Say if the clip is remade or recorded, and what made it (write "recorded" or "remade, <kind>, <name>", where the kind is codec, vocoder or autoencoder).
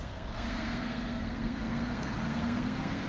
remade, codec, SNAC